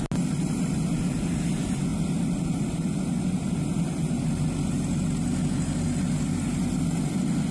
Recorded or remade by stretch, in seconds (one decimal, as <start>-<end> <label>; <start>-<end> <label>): 0.0-7.5 recorded